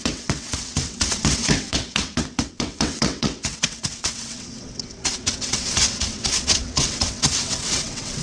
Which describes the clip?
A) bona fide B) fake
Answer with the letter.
B